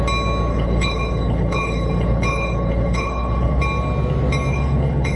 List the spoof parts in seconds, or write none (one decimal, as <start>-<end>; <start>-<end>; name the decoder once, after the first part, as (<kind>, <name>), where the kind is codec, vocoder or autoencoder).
0.5-3.6 (codec, HILCodec); 4.5-5.2